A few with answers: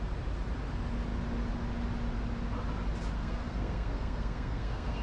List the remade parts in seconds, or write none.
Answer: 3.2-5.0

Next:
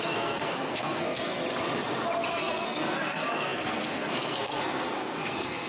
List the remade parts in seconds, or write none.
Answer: 0.0-1.4; 2.3-5.7

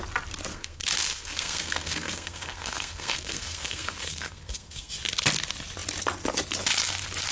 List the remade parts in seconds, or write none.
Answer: 0.5-4.9

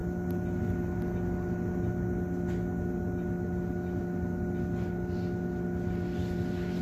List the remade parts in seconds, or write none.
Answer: none

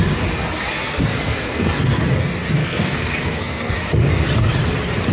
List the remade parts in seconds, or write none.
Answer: 1.1-1.8; 2.6-3.7

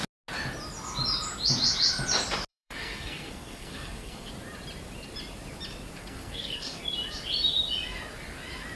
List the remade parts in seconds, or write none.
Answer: 2.5-4.3; 6.0-6.8

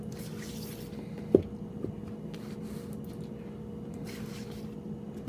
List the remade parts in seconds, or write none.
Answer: none

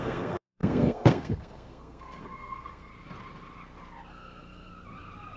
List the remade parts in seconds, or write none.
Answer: 0.0-2.9; 4.1-4.7